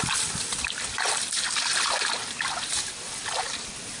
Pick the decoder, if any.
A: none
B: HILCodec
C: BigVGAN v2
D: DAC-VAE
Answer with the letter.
C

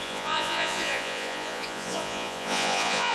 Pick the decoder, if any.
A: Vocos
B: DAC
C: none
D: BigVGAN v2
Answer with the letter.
A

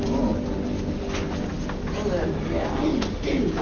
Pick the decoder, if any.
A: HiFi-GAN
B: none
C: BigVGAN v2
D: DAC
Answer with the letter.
B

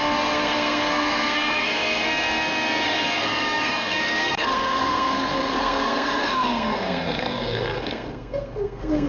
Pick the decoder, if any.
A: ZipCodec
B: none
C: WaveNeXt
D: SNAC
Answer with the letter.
D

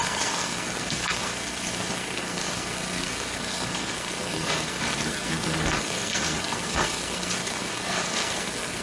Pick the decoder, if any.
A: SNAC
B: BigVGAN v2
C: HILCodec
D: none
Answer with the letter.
A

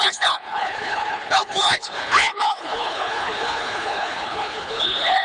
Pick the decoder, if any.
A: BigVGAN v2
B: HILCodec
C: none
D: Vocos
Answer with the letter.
B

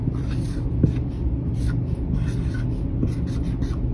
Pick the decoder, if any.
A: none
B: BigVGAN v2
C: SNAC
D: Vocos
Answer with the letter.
B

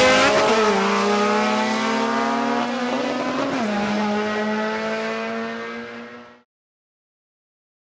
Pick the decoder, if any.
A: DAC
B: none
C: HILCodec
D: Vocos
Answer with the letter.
B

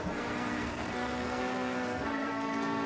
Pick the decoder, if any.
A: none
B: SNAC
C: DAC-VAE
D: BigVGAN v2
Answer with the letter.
B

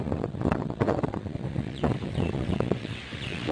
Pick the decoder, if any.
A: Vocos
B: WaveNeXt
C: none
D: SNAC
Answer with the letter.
B